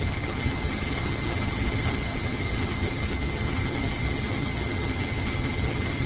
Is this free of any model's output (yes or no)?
no